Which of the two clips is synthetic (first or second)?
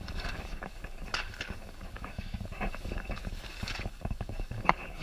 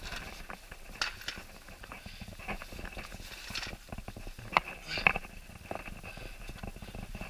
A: first